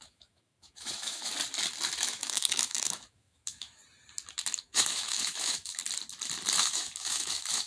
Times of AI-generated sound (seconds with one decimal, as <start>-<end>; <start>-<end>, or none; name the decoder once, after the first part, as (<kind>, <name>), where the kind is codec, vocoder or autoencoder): 0.0-1.3 (autoencoder, DAC-VAE); 2.1-3.8; 4.6-5.8; 6.6-7.7